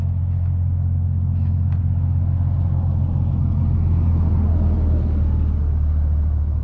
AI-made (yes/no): no